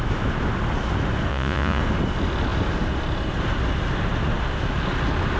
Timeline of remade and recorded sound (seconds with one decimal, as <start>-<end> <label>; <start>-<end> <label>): 0.0-1.3 recorded; 1.3-1.8 remade; 1.8-5.4 recorded